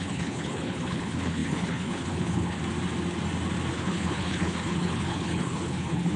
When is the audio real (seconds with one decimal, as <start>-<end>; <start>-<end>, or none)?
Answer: 2.6-3.7